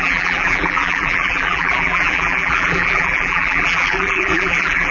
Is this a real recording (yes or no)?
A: no